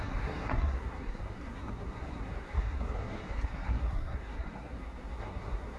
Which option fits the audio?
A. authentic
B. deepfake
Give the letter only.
B